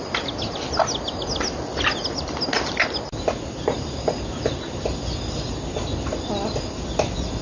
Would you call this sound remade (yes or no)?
no